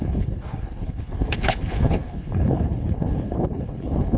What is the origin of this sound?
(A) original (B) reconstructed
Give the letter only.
B